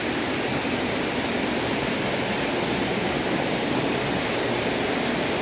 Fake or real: real